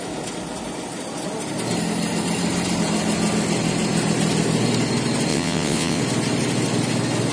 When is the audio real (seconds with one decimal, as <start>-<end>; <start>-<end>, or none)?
0.0-5.3; 6.0-7.3